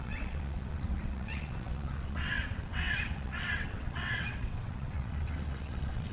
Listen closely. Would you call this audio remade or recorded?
remade